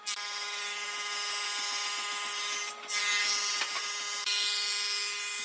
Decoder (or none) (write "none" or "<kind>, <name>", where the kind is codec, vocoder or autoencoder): none